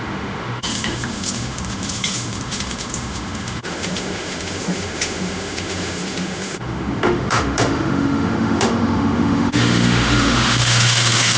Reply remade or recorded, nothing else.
remade